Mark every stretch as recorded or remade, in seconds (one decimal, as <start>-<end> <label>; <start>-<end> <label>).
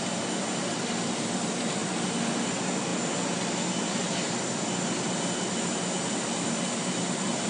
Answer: 0.0-2.9 remade; 2.9-6.5 recorded; 6.5-7.5 remade